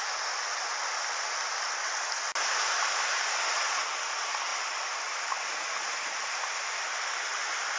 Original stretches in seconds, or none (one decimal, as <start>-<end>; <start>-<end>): 0.0-7.8